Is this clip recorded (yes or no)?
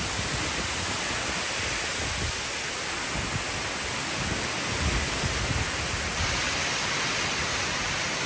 yes